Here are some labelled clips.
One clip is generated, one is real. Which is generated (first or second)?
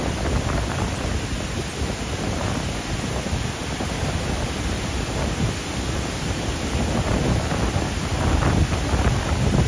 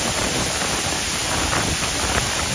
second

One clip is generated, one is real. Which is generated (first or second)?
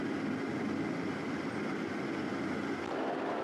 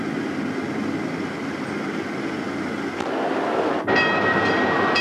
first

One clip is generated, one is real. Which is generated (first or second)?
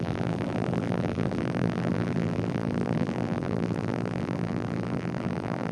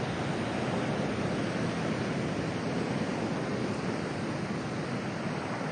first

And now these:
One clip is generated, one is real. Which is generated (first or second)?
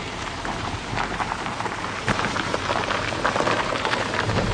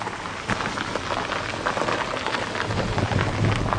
first